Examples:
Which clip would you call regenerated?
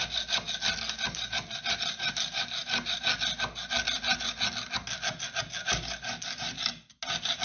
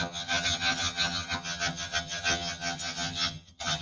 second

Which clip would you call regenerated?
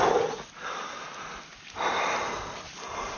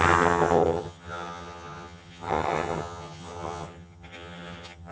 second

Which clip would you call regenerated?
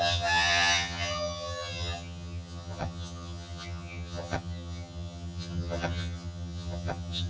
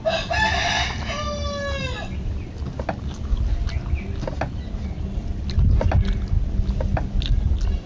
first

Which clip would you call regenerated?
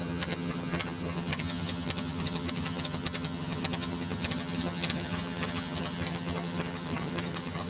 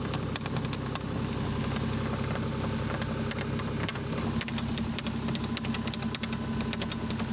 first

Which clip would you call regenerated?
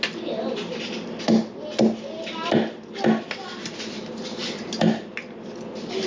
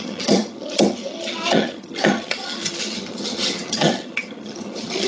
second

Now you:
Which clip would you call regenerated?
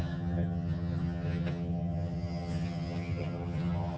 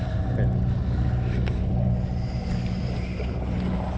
first